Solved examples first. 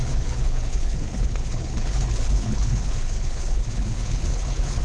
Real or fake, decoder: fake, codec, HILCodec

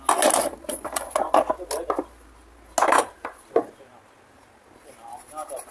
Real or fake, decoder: real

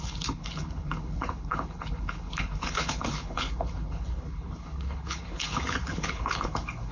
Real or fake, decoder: fake, codec, HILCodec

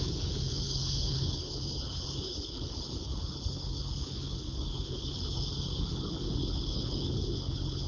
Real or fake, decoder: fake, codec, HILCodec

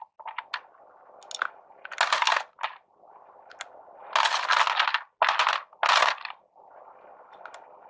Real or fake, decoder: real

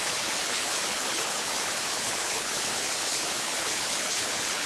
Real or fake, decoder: fake, codec, HILCodec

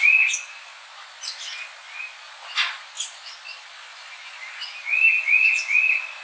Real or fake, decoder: real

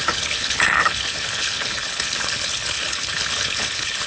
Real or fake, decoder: fake, codec, HILCodec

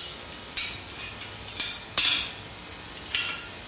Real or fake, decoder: real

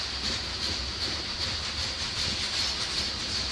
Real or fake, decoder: real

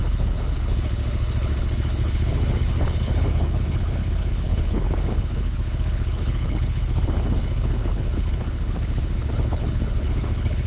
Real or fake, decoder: fake, codec, HILCodec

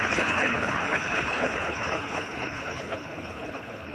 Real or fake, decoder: fake, codec, HILCodec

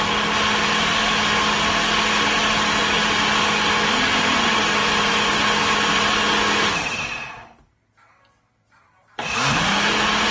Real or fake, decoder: real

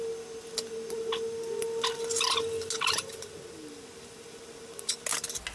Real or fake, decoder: real